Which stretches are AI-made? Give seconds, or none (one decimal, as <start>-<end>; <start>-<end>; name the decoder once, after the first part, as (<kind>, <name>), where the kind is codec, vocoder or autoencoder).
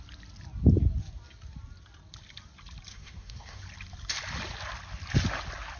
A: 2.9-3.6 (codec, SNAC)